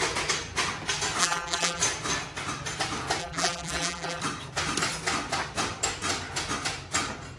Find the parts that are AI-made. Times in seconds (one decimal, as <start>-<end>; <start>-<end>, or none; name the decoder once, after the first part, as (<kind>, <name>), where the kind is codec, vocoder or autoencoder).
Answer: 1.2-1.8 (vocoder, BigVGAN v2); 3.2-4.2